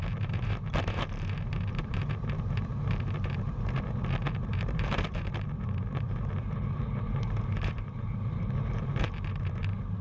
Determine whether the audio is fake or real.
fake